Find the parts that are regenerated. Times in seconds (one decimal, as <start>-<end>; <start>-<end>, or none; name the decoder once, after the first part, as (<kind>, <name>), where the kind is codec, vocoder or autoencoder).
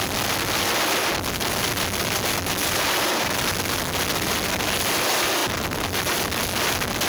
none